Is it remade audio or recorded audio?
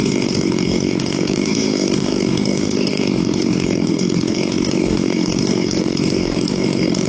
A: remade